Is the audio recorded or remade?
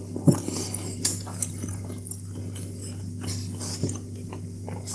recorded